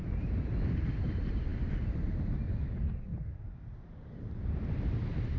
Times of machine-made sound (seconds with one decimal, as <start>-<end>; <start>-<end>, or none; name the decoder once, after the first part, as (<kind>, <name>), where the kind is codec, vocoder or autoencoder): 1.5-2.1 (vocoder, BigVGAN v2); 3.1-5.4